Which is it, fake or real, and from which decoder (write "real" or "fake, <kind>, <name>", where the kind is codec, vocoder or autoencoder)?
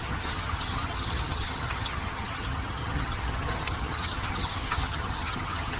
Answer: fake, vocoder, HiFi-GAN